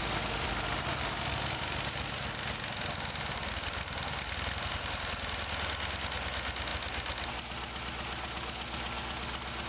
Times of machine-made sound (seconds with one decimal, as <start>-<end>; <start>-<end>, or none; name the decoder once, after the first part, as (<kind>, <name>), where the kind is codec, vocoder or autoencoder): none